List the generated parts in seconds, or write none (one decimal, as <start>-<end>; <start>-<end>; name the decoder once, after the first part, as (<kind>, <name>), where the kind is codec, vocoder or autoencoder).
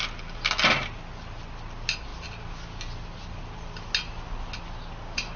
none